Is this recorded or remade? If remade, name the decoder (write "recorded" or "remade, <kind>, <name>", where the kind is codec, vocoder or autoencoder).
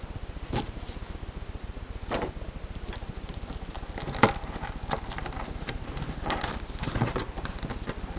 recorded